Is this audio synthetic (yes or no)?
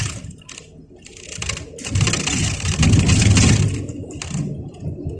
no